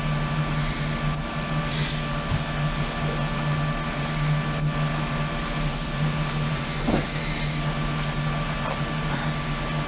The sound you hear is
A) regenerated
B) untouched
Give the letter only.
B